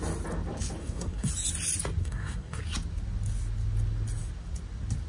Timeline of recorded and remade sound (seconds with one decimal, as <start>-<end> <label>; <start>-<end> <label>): 0.0-0.8 recorded; 0.8-1.3 remade; 1.3-2.0 recorded; 2.0-2.6 remade; 2.6-5.1 recorded